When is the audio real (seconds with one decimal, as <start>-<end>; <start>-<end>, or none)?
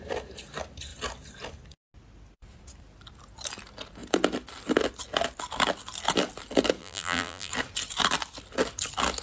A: 0.0-6.8; 7.5-9.2